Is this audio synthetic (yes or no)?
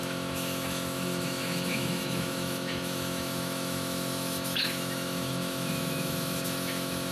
yes